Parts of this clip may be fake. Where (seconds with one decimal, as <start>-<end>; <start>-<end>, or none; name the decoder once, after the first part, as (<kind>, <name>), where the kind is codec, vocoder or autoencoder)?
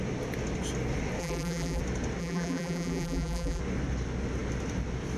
1.2-1.8 (vocoder, BigVGAN v2); 2.2-3.6